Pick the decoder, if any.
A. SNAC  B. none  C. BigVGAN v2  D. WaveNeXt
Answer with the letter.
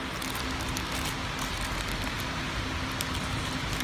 B